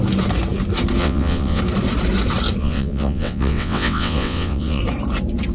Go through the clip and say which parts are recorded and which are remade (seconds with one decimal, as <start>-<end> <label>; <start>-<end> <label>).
0.0-1.0 recorded; 1.0-1.6 remade; 1.6-2.6 recorded; 2.6-4.8 remade; 4.8-5.5 recorded